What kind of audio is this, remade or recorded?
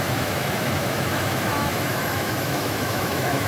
remade